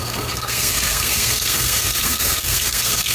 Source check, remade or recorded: remade